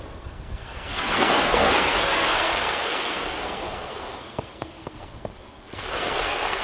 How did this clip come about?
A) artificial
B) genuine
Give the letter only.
A